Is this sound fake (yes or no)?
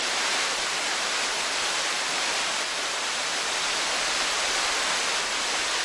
no